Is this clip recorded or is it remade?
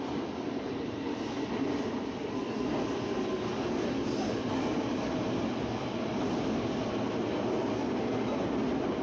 recorded